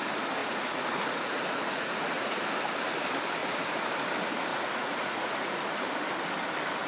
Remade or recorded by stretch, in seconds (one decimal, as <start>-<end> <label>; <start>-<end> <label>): 0.0-0.4 recorded; 0.4-2.6 remade; 2.6-3.4 recorded; 3.4-3.9 remade; 3.9-4.5 recorded; 4.5-5.6 remade; 5.6-6.9 recorded

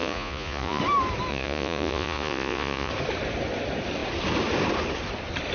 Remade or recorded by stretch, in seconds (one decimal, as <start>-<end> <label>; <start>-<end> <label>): 0.0-0.8 remade; 0.8-1.3 recorded; 1.3-2.9 remade; 2.9-5.5 recorded

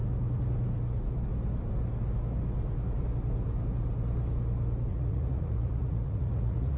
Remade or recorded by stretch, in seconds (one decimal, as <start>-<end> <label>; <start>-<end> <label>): 0.0-4.9 recorded; 4.9-6.8 remade

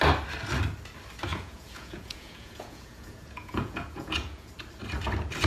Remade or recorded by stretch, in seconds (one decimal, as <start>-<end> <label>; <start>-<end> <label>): 0.0-1.3 recorded; 1.3-4.5 remade; 4.5-5.5 recorded

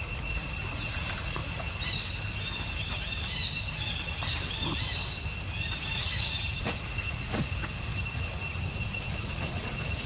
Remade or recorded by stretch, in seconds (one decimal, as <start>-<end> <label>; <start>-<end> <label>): 0.0-1.4 remade; 1.4-5.9 recorded; 5.9-10.1 remade

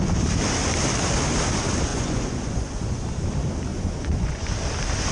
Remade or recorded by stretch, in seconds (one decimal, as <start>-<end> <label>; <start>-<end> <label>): 0.0-1.9 recorded; 1.9-3.0 remade; 3.0-3.7 recorded; 3.7-4.5 remade; 4.5-5.1 recorded

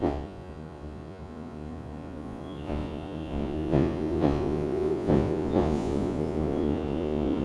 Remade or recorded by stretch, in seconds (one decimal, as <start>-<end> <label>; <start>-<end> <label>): 0.0-7.4 remade